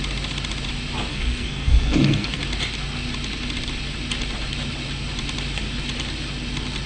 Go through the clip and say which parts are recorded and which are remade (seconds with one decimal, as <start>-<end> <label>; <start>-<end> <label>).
0.0-1.1 recorded; 1.1-2.4 remade; 2.4-6.9 recorded